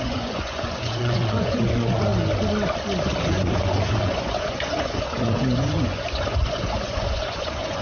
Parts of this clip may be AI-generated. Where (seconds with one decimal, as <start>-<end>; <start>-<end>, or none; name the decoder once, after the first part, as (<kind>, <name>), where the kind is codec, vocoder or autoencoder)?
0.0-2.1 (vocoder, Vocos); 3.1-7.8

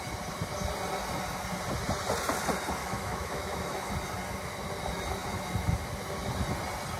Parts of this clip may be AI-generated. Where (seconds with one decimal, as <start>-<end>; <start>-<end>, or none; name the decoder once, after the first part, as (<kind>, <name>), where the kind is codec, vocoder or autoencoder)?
2.8-3.9 (autoencoder, DAC-VAE)

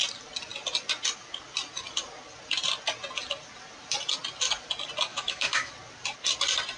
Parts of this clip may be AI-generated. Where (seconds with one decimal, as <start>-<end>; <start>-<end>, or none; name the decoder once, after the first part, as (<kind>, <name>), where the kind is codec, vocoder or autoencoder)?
5.1-5.7 (autoencoder, DAC-VAE)